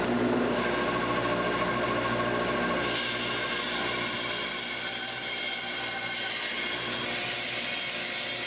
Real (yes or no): yes